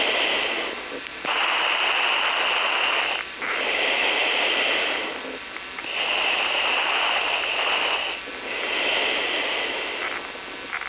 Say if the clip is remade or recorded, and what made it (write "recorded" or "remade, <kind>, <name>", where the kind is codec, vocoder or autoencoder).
recorded